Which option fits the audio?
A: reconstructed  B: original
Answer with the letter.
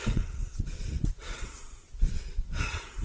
A